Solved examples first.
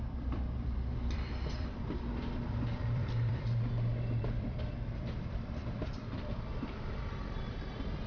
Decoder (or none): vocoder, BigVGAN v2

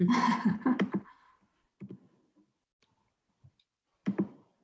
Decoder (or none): none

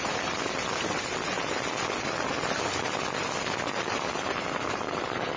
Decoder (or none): none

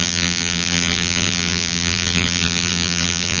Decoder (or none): vocoder, BigVGAN v2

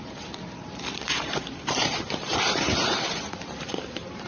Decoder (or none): vocoder, BigVGAN v2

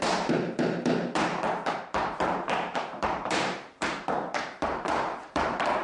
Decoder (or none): vocoder, BigVGAN v2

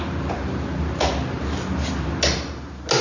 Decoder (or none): none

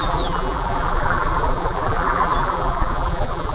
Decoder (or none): vocoder, BigVGAN v2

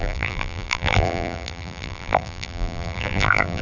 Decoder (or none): vocoder, BigVGAN v2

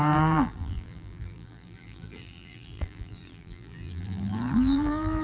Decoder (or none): vocoder, BigVGAN v2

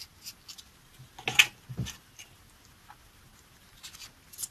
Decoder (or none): none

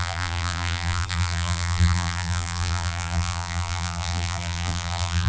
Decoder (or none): vocoder, BigVGAN v2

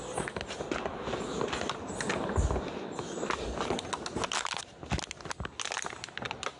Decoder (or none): none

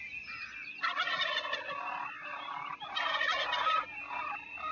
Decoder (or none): none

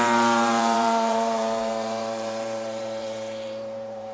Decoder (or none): vocoder, BigVGAN v2